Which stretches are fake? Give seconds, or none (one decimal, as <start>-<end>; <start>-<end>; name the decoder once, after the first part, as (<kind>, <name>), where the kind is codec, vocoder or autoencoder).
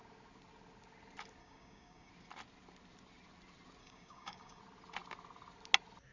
1.4-2.1 (codec, DAC); 3.8-4.6